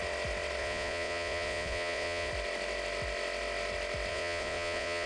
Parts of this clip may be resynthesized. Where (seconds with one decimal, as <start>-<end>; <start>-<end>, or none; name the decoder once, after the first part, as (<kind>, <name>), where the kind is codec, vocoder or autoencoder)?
0.6-2.3 (vocoder, Vocos); 4.1-5.1